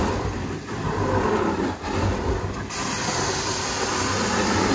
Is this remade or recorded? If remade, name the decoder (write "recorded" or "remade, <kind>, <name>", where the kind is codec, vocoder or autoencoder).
remade, vocoder, BigVGAN v2